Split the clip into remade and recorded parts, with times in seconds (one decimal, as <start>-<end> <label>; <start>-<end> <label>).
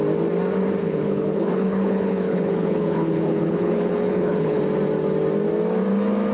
0.0-0.8 recorded; 0.8-4.6 remade; 4.6-6.3 recorded